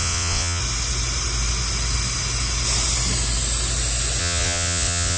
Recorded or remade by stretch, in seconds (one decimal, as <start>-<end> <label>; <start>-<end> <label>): 0.0-0.6 remade; 0.6-4.2 recorded; 4.2-5.2 remade